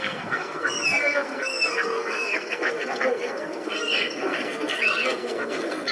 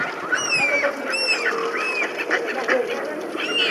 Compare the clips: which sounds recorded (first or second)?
second